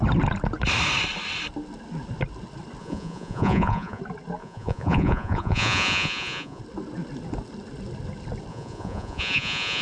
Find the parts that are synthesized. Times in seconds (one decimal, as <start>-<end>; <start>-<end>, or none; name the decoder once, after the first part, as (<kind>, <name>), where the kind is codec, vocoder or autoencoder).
2.8-4.0 (vocoder, Vocos); 4.4-6.6; 8.5-9.8